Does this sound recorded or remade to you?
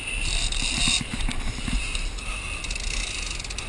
recorded